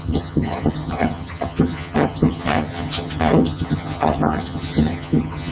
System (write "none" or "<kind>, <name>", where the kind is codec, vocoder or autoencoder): vocoder, HiFi-GAN